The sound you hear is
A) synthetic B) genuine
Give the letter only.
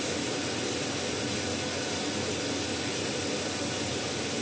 A